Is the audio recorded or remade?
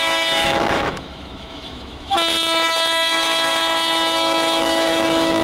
remade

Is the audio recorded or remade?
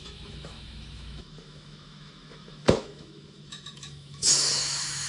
remade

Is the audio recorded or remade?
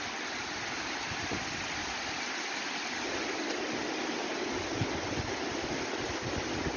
recorded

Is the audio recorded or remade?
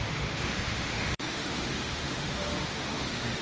remade